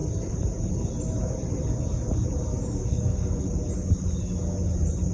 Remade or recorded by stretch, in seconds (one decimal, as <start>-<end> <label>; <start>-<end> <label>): 0.0-2.5 recorded; 2.5-3.4 remade; 3.4-5.1 recorded